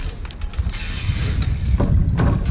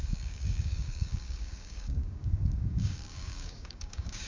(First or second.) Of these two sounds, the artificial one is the second